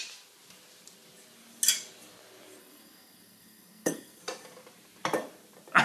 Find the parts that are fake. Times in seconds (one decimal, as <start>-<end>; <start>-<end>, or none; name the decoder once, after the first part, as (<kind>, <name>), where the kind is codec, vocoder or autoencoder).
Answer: 2.6-4.2 (codec, SNAC)